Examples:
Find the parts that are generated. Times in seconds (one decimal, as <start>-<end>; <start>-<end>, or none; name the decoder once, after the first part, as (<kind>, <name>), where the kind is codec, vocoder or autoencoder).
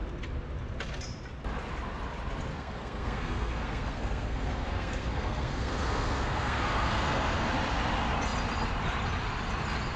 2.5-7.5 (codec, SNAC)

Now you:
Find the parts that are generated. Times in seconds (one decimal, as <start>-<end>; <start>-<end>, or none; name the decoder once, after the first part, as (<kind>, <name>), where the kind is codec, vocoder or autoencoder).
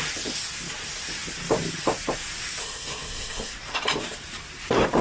2.6-3.5 (codec, SNAC)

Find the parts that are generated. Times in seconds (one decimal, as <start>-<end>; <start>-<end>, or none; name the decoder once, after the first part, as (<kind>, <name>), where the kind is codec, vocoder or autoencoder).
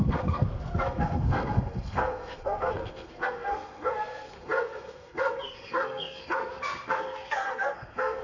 0.0-8.2 (codec, SNAC)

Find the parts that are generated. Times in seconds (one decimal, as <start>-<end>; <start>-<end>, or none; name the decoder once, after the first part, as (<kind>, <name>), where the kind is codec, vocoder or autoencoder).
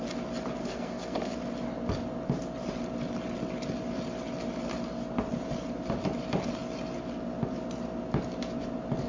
0.6-1.4 (codec, SNAC)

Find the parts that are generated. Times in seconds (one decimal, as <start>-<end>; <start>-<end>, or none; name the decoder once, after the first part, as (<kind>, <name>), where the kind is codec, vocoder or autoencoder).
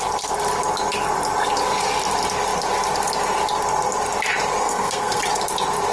4.6-5.2 (codec, SNAC)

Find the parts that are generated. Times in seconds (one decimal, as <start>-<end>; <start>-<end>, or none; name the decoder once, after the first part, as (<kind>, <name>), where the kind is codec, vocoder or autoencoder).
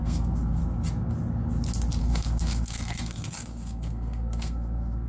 0.0-0.6 (codec, SNAC); 2.0-5.1